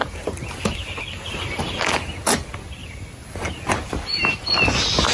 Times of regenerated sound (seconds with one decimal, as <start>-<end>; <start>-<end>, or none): none